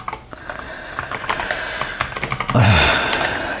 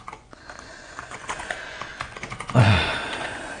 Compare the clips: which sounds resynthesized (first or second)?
second